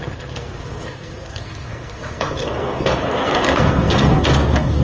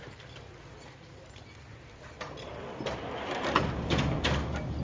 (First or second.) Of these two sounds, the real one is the second